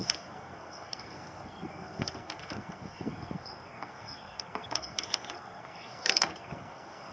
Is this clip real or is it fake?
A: fake